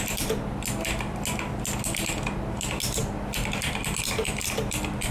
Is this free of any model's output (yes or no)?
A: yes